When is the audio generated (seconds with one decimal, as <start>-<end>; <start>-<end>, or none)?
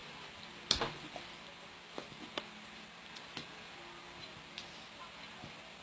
none